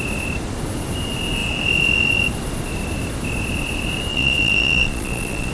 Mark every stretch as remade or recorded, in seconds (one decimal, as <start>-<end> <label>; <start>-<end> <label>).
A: 0.0-4.1 recorded; 4.1-5.5 remade